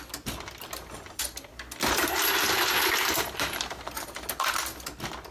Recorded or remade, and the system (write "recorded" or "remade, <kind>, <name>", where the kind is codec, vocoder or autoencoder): recorded